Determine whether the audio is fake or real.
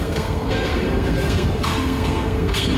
fake